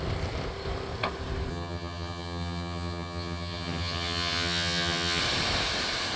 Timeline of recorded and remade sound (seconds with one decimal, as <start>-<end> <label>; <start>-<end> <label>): 0.0-1.5 recorded; 1.5-5.2 remade; 5.2-6.2 recorded